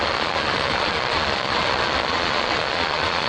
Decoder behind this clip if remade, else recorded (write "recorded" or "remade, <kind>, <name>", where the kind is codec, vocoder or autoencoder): remade, vocoder, Vocos